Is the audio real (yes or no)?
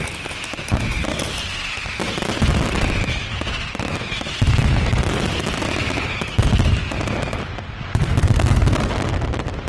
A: yes